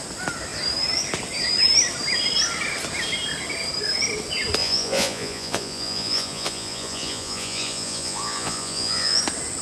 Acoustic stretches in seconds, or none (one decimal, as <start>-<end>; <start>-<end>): 0.0-4.6; 9.2-9.6